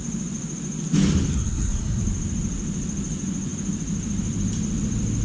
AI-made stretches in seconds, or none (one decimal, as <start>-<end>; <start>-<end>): 1.3-2.0